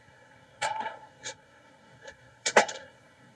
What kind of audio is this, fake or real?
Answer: fake